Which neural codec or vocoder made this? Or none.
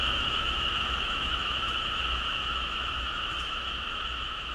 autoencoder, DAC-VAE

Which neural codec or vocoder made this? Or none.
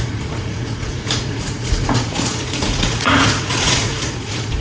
vocoder, Vocos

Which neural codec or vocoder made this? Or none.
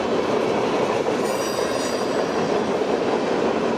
none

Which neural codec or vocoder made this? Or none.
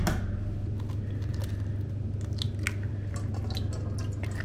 none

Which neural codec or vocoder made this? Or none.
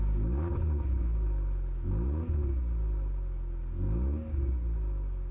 none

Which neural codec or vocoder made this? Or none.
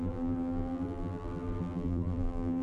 vocoder, BigVGAN v2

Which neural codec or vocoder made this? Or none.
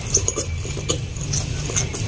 none